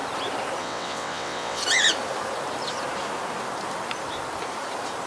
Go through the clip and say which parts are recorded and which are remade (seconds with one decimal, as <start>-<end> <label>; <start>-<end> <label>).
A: 0.0-0.6 recorded; 0.6-1.6 remade; 1.6-5.1 recorded